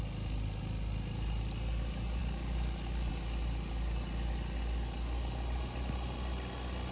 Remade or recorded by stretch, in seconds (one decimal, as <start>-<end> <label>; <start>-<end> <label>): 0.0-6.9 recorded